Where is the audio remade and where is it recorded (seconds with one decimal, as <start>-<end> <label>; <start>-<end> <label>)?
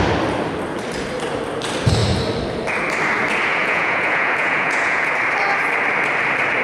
0.0-3.6 recorded; 3.6-5.1 remade; 5.1-6.6 recorded